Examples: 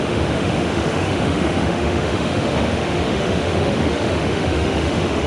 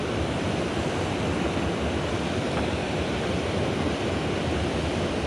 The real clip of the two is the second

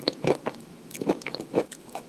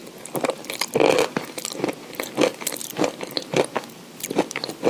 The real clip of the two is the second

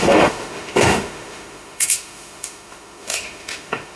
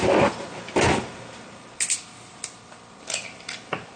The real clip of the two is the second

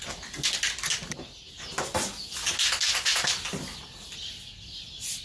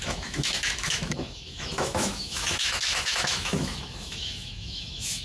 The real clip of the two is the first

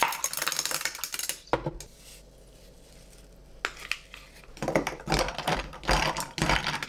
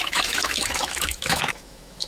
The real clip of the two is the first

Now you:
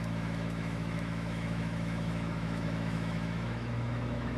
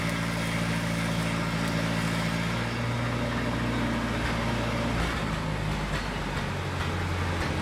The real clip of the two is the second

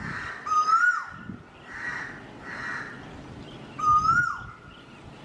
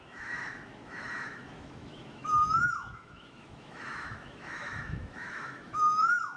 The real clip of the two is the first